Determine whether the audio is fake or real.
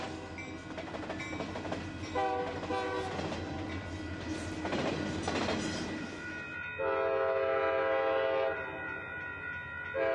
real